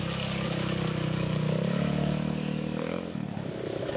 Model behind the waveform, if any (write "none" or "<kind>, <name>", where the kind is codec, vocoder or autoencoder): codec, DAC